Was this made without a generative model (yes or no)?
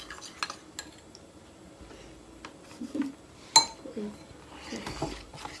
yes